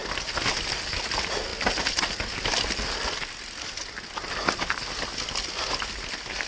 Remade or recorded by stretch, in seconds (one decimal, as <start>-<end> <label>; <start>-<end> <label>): 0.0-6.5 recorded